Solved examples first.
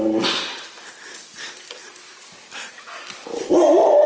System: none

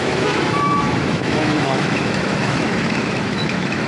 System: autoencoder, DAC-VAE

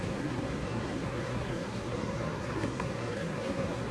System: codec, SNAC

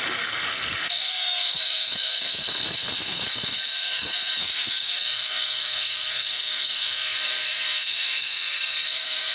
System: codec, SNAC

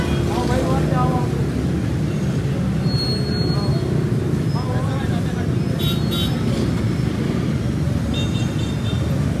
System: none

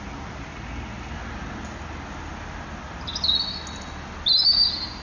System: none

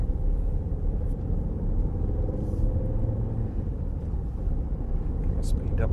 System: vocoder, BigVGAN v2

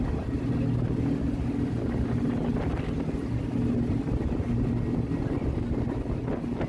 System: none